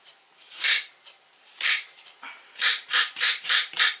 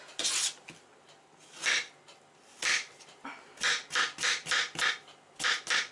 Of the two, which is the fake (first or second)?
first